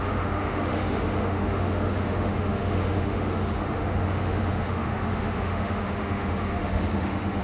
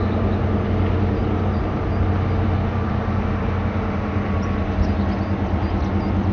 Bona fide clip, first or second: second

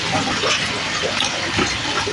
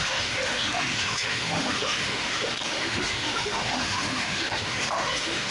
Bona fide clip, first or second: first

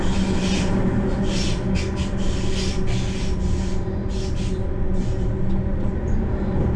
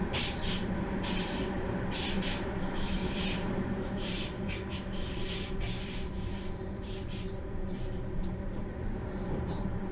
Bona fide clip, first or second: first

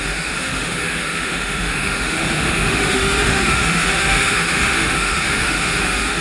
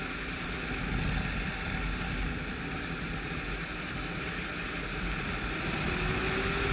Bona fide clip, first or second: second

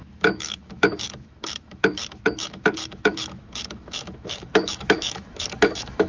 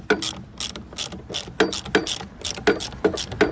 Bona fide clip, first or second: second